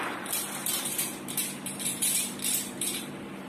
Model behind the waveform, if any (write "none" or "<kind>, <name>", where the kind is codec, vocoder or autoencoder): vocoder, BigVGAN v2